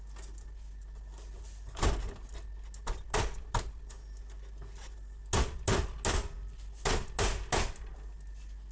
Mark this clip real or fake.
real